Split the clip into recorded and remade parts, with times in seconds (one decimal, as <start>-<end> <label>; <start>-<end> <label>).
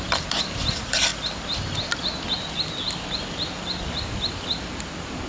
0.0-5.3 recorded